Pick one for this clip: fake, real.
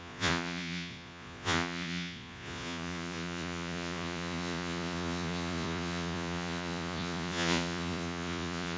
fake